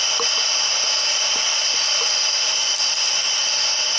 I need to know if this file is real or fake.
real